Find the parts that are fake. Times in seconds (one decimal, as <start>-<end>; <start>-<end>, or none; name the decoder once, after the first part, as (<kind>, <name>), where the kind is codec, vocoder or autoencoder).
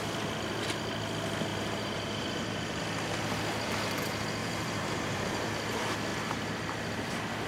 1.5-2.8 (vocoder, BigVGAN v2); 4.4-5.5